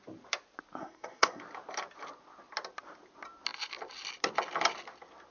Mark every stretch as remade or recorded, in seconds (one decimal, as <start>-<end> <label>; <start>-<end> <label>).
0.0-0.8 recorded; 0.8-1.4 remade; 1.4-5.3 recorded